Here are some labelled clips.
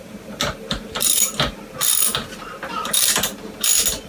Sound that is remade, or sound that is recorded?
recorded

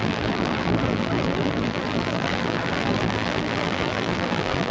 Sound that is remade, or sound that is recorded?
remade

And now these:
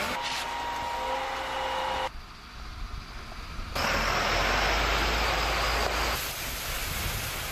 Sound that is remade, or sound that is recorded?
recorded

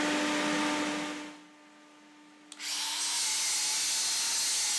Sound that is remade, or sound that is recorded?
recorded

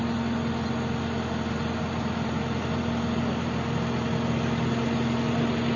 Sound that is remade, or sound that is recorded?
recorded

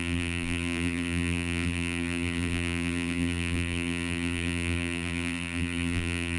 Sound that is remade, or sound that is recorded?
remade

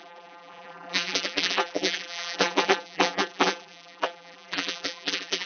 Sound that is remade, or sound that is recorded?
remade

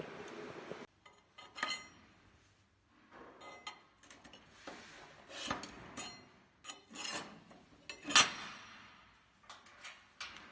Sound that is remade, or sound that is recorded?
recorded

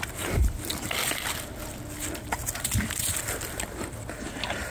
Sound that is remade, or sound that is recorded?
recorded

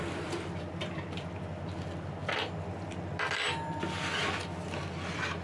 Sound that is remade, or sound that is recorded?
recorded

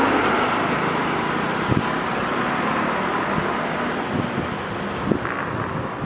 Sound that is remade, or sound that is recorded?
recorded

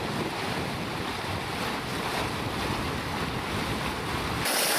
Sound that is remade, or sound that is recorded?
recorded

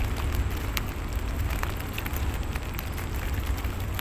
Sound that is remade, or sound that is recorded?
recorded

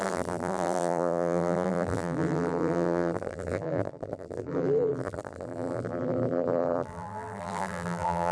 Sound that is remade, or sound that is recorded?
remade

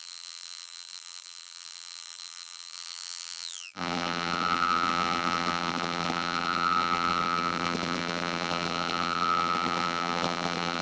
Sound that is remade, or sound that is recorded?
remade